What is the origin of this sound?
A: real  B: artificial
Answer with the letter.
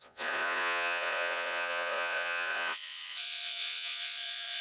B